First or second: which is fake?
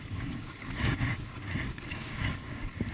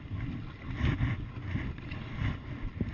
first